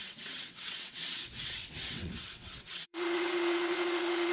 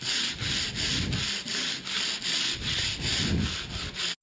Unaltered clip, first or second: second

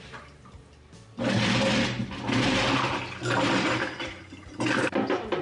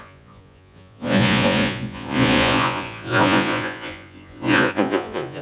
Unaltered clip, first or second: first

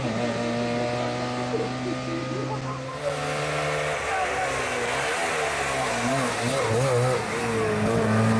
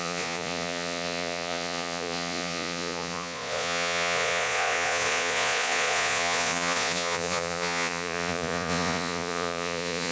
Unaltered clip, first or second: first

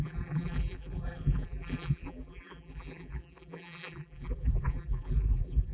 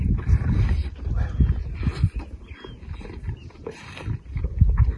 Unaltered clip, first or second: second